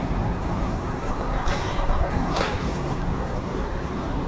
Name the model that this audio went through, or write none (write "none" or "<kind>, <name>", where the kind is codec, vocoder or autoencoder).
codec, SNAC